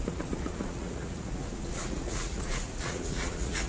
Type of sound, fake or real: fake